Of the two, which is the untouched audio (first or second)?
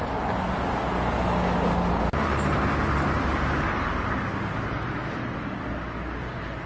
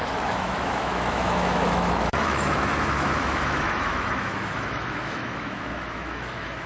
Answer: first